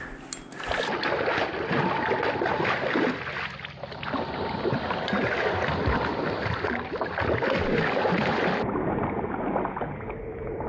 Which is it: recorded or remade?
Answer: recorded